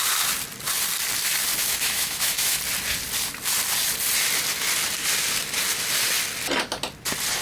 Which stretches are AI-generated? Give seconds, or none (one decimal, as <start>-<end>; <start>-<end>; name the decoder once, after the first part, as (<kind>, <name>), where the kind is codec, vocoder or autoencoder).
1.6-2.6 (autoencoder, DAC-VAE)

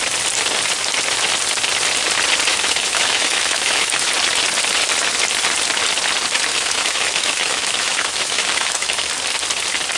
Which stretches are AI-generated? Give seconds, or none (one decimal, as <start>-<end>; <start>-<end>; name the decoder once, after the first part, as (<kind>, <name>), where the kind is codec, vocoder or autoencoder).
2.5-4.1 (autoencoder, DAC-VAE); 6.5-9.1

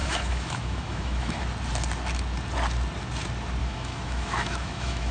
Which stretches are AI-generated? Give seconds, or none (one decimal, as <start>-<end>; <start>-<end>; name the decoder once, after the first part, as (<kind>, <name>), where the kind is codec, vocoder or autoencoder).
0.0-1.4 (autoencoder, DAC-VAE); 3.6-5.1

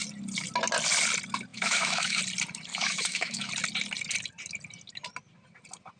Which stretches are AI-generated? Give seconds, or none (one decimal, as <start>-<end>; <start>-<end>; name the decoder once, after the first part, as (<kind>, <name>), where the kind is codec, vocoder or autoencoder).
1.5-2.2 (autoencoder, DAC-VAE); 2.7-3.5

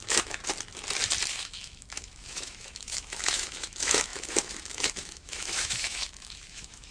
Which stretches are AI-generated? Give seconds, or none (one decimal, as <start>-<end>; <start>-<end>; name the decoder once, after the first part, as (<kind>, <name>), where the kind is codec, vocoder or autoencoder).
0.0-0.4 (autoencoder, DAC-VAE); 1.3-6.9

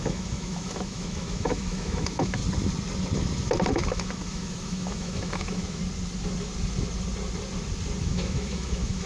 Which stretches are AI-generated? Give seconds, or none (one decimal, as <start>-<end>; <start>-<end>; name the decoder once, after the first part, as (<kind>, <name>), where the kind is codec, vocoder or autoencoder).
0.0-2.4 (autoencoder, DAC-VAE); 3.7-5.8; 8.0-9.1